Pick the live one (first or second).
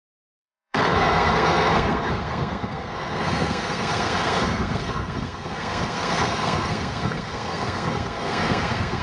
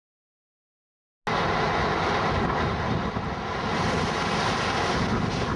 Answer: second